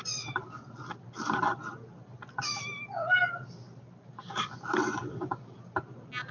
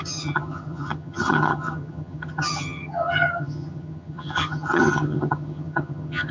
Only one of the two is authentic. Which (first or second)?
first